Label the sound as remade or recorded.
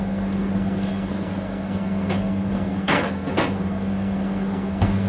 remade